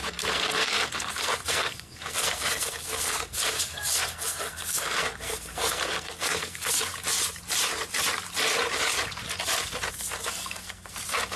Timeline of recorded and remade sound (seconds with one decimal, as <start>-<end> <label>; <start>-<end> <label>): 0.0-6.9 remade; 6.9-9.9 recorded; 9.9-11.4 remade